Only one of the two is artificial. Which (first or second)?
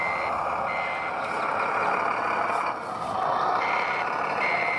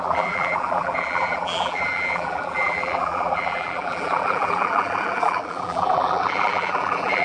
second